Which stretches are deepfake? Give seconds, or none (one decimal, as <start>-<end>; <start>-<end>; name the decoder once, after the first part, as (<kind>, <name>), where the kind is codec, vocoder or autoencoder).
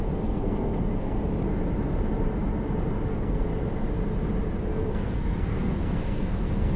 0.0-1.2 (codec, SNAC); 3.1-3.5; 4.6-6.8